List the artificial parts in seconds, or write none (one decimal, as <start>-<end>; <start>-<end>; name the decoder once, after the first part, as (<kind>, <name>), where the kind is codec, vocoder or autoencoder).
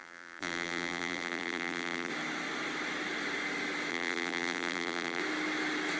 0.0-2.1 (vocoder, BigVGAN v2); 3.9-5.2